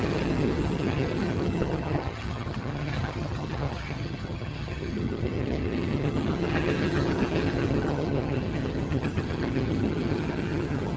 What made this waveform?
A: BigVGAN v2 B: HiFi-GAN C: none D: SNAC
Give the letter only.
B